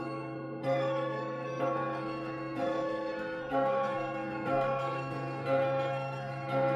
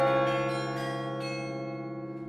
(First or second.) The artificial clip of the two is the first